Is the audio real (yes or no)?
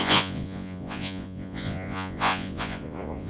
no